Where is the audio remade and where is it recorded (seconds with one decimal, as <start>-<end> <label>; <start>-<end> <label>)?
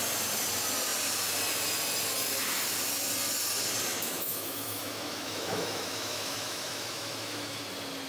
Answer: 0.0-3.9 recorded; 3.9-7.6 remade; 7.6-8.1 recorded